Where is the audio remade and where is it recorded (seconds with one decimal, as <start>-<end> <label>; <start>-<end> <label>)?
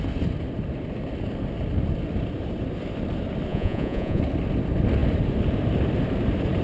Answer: 0.0-3.5 recorded; 3.5-4.2 remade; 4.2-6.6 recorded